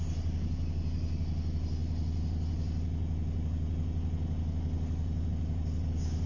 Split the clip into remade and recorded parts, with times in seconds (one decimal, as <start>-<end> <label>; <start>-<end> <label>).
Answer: 0.0-6.3 recorded